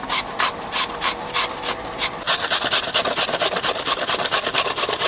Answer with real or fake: real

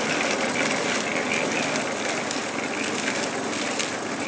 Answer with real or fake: real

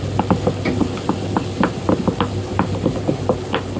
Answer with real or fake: real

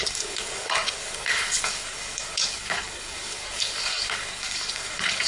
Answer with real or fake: fake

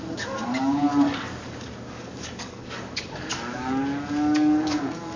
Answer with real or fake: fake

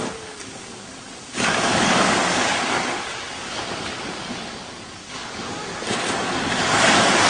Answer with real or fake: fake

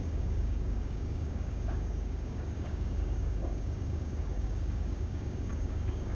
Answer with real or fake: fake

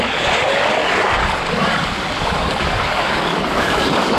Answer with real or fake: fake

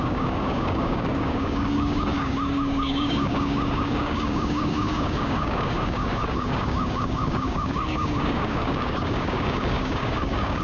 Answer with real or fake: fake